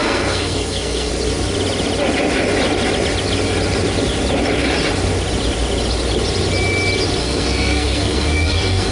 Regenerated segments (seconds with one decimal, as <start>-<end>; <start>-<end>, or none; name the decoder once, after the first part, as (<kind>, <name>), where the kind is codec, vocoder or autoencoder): 0.0-1.1 (codec, SNAC); 7.2-8.9